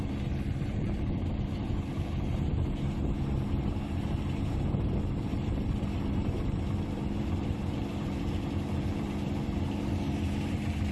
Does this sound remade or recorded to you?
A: remade